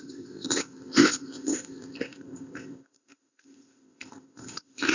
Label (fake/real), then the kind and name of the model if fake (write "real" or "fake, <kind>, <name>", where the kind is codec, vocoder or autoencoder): fake, codec, ZipCodec